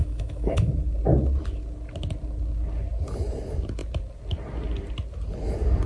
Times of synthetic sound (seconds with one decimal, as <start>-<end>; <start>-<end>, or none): 0.0-0.7